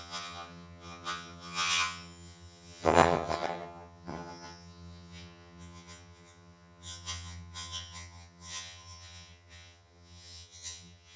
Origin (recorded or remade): remade